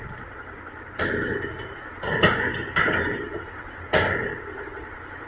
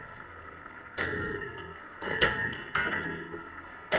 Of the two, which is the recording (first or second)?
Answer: first